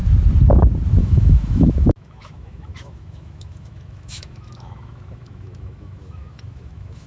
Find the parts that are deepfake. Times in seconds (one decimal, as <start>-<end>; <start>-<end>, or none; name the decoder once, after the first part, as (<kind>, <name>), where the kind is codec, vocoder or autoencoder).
1.0-7.1 (autoencoder, DAC-VAE)